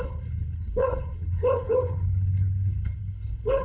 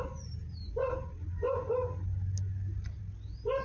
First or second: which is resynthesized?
first